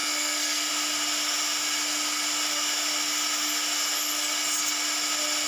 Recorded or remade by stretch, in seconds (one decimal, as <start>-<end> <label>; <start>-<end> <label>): 0.0-0.7 remade; 0.7-5.5 recorded